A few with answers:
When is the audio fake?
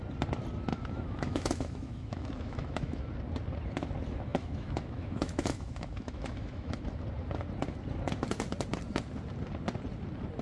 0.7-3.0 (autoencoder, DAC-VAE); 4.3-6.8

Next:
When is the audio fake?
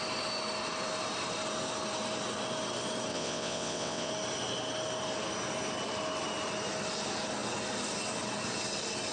3.1-4.1 (vocoder, WaveNeXt)